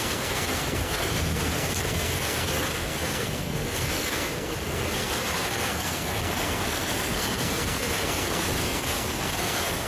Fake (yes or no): yes